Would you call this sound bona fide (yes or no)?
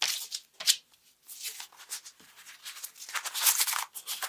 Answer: yes